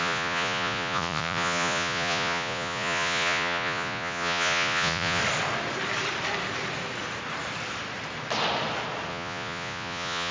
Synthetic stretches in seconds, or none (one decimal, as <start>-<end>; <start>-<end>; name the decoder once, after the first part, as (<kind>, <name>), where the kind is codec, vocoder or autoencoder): 0.0-5.2 (vocoder, Vocos); 9.1-10.3